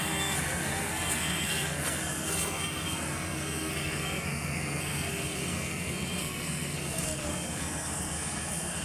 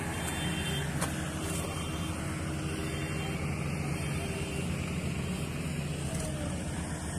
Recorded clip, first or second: second